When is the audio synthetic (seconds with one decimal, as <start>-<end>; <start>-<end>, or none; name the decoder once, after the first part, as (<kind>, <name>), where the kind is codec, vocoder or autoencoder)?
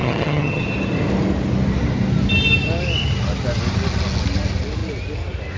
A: 0.0-0.6 (vocoder, HiFi-GAN)